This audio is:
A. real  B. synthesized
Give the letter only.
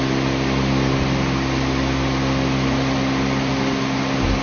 A